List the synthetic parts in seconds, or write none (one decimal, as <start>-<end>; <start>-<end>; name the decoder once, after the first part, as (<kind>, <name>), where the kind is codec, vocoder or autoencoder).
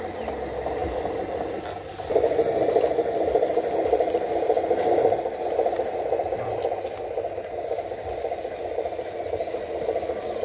none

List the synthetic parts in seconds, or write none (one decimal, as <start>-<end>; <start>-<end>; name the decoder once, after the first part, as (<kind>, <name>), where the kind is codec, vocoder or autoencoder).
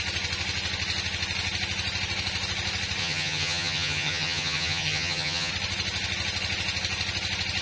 3.0-5.5 (vocoder, HiFi-GAN)